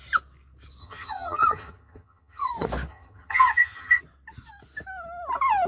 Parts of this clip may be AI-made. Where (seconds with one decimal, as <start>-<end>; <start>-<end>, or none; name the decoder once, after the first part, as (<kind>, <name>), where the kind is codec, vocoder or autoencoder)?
0.8-2.5 (vocoder, HiFi-GAN); 2.9-4.0